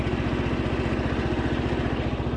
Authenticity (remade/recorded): recorded